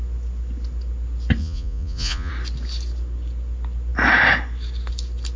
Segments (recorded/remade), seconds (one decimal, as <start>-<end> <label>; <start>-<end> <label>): 0.0-1.4 recorded; 1.4-2.3 remade; 2.3-5.4 recorded